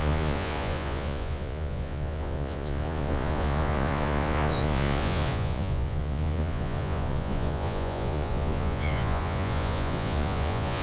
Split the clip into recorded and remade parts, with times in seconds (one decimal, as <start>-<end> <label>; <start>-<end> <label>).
0.0-10.8 remade